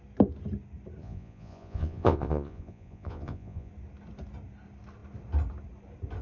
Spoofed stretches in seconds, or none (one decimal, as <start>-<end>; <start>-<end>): 1.0-3.7